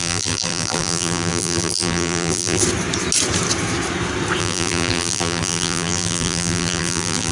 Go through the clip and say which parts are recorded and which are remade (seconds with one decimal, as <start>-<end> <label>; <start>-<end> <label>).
0.0-2.6 remade; 2.6-4.4 recorded; 4.4-7.3 remade